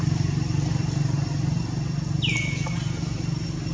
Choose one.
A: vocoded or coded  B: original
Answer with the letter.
B